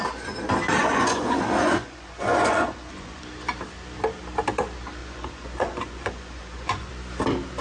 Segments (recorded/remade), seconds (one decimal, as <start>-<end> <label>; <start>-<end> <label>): 0.0-0.8 recorded; 0.8-3.2 remade; 3.2-5.0 recorded; 5.0-6.9 remade; 6.9-7.6 recorded

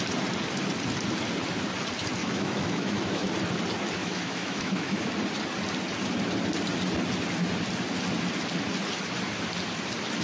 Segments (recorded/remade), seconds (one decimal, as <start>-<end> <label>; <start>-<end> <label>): 0.0-2.2 recorded; 2.2-3.3 remade; 3.3-4.0 recorded; 4.0-5.0 remade; 5.0-10.2 recorded

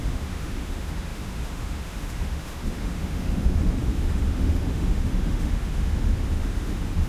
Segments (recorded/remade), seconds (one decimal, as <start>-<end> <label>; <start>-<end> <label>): 0.0-7.1 remade

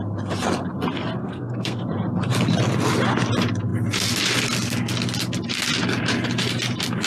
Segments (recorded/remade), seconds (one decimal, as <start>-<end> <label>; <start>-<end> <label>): 0.0-1.2 recorded; 1.2-1.8 remade; 1.8-7.1 recorded